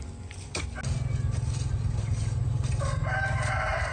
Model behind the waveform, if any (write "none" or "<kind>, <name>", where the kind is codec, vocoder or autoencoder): none